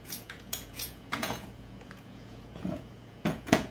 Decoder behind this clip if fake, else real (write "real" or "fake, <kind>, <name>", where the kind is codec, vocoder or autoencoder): fake, vocoder, Vocos